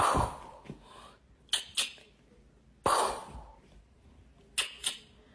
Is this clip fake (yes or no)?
no